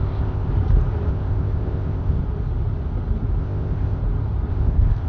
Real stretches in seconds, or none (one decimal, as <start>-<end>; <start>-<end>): 0.5-1.1; 2.2-3.4; 4.0-4.5